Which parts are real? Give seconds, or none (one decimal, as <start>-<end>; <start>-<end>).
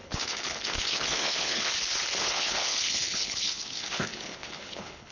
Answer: 1.7-2.2